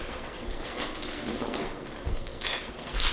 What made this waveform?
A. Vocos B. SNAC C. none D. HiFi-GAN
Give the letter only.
B